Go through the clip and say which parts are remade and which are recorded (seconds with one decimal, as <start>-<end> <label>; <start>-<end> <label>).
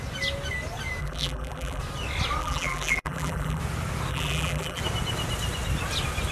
0.0-1.0 recorded; 1.0-1.8 remade; 1.8-2.4 recorded; 2.4-3.6 remade; 3.6-4.1 recorded; 4.1-4.8 remade; 4.8-6.3 recorded